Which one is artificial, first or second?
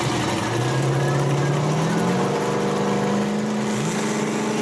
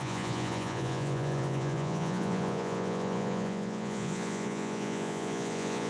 second